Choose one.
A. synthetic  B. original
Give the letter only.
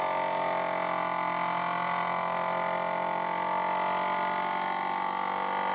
B